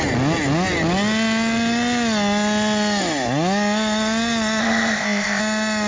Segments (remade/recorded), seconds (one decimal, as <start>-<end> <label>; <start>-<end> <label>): 0.0-4.6 recorded; 4.6-5.4 remade; 5.4-5.9 recorded